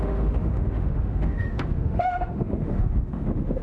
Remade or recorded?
remade